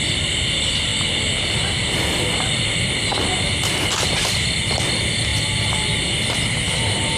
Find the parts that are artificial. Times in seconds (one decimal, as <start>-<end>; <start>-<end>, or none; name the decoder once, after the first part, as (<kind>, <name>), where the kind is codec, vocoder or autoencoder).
none